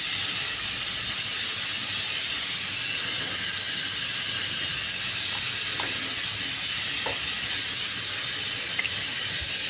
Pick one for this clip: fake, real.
real